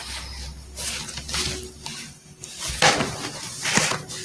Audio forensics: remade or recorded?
recorded